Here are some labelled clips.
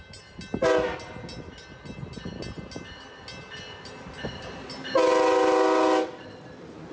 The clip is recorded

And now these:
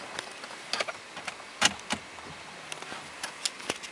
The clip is recorded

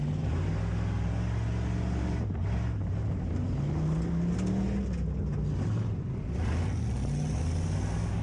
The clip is recorded